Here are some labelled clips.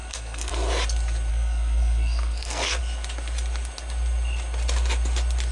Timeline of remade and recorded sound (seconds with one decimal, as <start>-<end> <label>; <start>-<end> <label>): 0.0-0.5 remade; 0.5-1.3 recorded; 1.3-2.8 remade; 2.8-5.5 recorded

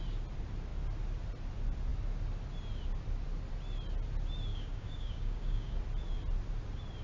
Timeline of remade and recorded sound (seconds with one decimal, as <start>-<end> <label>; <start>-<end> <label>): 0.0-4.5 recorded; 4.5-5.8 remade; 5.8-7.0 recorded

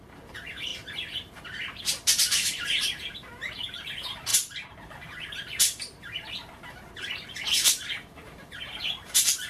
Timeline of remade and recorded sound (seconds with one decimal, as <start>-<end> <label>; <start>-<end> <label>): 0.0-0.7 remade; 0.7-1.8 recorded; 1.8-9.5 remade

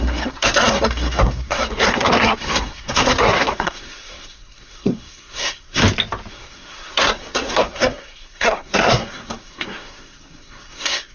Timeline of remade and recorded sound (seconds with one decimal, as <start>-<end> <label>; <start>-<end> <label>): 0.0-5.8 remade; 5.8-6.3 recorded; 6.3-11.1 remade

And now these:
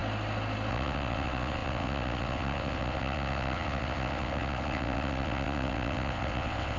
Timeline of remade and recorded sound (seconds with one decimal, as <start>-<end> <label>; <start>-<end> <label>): 0.0-0.7 recorded; 0.7-6.8 remade

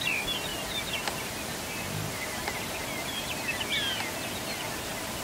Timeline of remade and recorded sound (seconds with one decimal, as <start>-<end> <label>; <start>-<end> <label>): 0.0-5.2 recorded

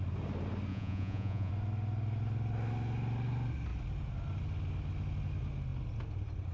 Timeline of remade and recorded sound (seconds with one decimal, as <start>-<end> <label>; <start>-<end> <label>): 0.0-0.7 recorded; 0.7-1.5 remade; 1.5-6.5 recorded

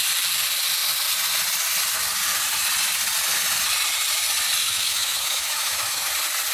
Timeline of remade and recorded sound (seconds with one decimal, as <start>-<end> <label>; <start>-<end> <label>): 0.0-4.6 recorded; 4.6-6.1 remade; 6.1-6.5 recorded